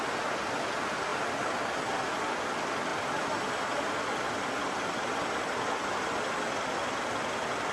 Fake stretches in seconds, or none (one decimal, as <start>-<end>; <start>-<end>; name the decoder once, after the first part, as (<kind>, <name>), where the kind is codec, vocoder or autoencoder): none